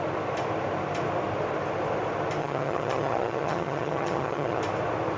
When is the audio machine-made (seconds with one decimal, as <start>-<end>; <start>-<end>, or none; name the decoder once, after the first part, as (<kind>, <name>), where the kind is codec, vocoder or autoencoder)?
2.4-4.6 (vocoder, HiFi-GAN)